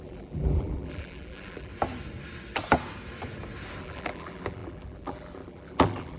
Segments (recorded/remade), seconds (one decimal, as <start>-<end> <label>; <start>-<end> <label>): 0.0-1.7 remade; 1.7-3.8 recorded; 3.8-6.2 remade